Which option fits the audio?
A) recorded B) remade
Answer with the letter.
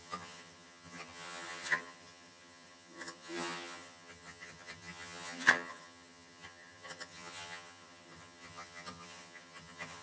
B